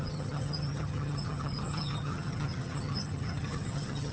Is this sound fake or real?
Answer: fake